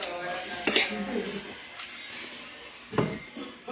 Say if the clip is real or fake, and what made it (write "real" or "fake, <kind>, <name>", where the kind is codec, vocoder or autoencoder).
real